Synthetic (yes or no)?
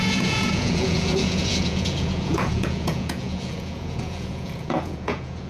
yes